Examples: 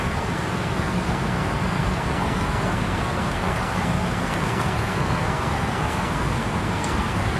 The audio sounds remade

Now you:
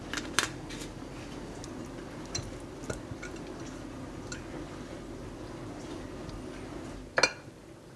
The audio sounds recorded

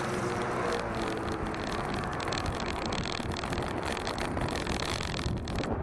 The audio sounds recorded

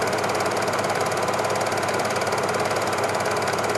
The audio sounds recorded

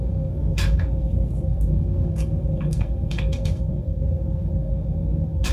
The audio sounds remade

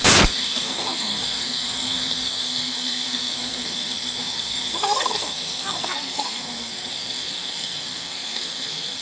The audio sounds remade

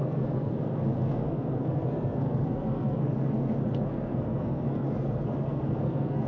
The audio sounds remade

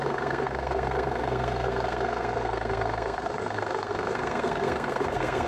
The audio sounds remade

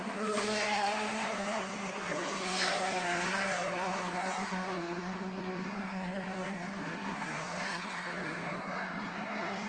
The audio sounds remade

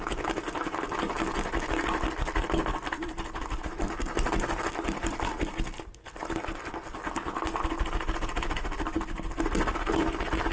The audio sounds recorded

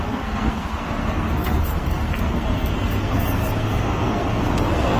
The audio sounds remade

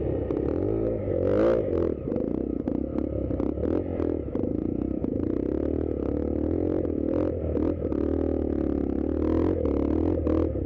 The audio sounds recorded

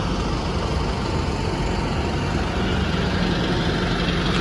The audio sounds recorded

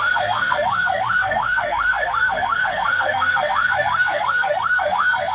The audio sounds remade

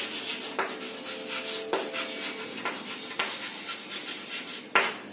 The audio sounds recorded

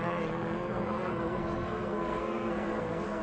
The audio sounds remade